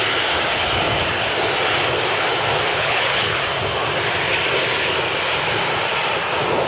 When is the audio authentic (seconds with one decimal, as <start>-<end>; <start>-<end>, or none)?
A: 0.0-2.7; 3.4-6.7